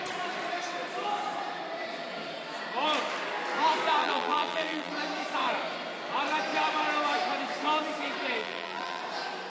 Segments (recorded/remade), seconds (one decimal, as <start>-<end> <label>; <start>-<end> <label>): 0.0-4.0 recorded; 4.0-4.9 remade; 4.9-8.4 recorded; 8.4-9.0 remade; 9.0-9.5 recorded